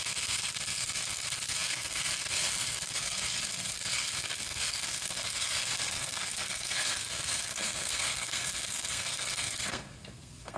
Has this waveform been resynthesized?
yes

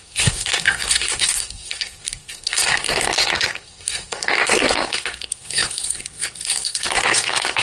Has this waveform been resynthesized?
yes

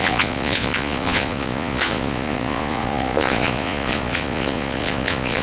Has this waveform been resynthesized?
yes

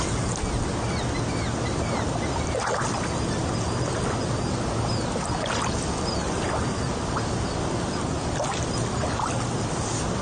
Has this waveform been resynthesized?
no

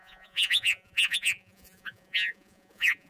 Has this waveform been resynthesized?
yes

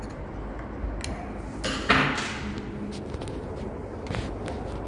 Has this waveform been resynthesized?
no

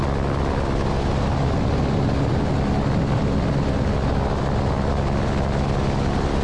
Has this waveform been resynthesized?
no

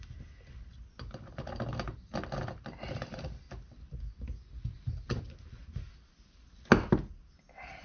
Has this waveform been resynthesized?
no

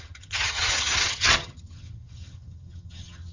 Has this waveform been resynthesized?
yes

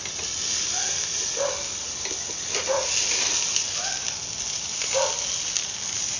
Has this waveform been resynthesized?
no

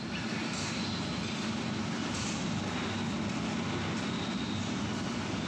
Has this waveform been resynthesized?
no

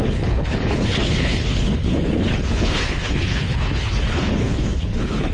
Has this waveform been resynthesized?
yes